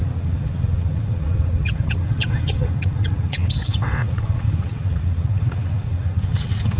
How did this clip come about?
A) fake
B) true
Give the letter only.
A